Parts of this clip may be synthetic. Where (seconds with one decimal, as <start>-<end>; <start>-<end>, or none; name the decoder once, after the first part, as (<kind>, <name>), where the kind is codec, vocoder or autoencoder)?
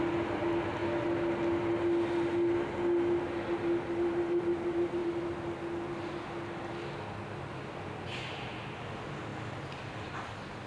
none